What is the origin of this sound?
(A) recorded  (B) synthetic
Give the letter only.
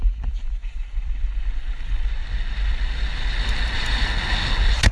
A